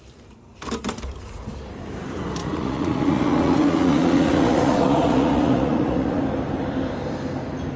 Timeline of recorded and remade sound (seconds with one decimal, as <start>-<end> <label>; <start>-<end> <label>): 0.0-2.4 recorded; 2.4-6.2 remade; 6.2-7.8 recorded